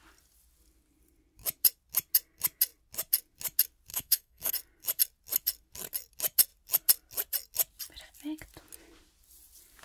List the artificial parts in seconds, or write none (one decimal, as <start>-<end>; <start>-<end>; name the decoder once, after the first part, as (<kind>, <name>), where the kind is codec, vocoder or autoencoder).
3.9-4.5 (codec, SNAC)